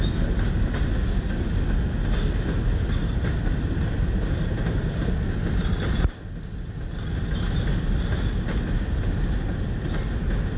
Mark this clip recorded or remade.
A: recorded